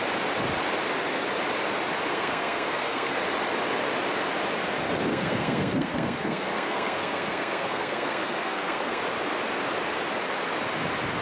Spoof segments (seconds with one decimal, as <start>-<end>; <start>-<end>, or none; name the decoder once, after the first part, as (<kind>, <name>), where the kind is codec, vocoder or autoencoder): 2.1-3.2 (codec, SNAC); 5.1-9.0